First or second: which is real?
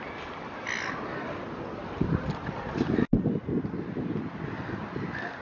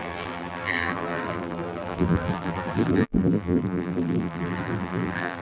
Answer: first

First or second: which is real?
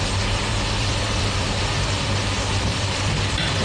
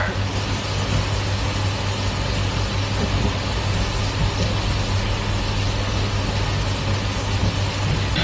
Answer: second